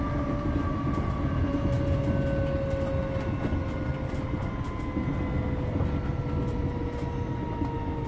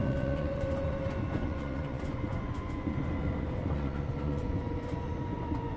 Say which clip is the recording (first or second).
first